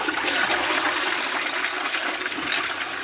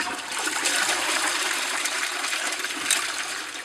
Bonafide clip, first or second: first